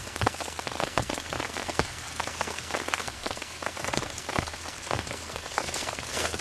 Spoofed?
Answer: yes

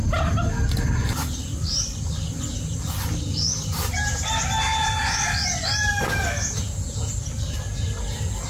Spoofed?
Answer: no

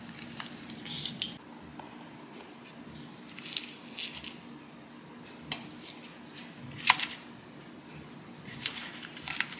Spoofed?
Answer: no